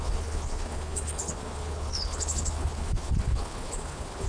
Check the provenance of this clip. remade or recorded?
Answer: remade